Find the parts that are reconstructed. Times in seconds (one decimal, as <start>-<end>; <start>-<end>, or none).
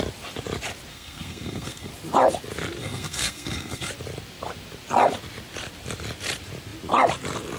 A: 0.9-1.9; 2.8-3.9